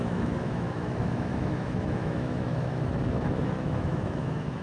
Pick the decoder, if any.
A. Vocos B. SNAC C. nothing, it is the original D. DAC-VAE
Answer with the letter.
D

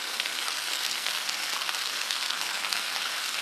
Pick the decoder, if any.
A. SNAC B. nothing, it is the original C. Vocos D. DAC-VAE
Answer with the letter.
A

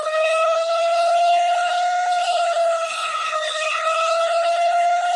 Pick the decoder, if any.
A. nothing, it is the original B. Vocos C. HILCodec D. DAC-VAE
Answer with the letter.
C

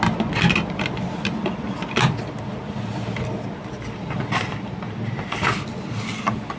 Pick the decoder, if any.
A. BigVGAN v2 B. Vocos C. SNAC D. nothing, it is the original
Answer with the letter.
D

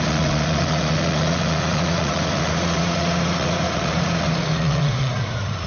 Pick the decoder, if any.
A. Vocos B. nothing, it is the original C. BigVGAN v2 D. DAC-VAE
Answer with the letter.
A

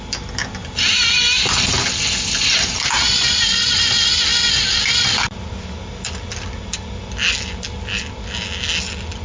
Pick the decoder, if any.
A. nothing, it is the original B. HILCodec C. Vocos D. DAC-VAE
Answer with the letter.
A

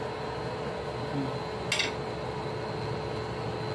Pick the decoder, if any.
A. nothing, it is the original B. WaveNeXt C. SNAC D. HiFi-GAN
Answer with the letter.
A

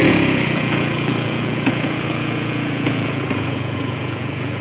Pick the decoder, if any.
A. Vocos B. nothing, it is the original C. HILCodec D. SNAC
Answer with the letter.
A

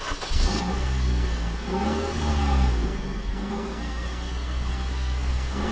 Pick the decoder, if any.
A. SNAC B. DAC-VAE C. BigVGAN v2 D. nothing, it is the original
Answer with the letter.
A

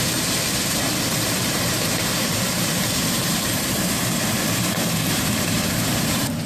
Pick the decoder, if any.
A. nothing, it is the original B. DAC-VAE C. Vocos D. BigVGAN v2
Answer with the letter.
D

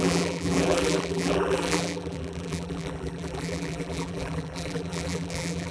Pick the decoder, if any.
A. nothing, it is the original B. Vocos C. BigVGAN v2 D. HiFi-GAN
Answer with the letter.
C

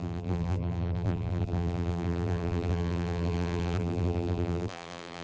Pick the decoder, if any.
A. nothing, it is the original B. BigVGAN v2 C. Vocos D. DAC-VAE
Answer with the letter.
B